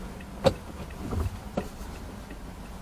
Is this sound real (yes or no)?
yes